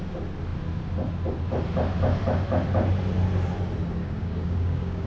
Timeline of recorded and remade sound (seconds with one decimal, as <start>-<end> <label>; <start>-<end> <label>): 0.0-4.0 recorded; 4.0-5.1 remade